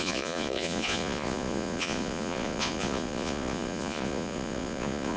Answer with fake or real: fake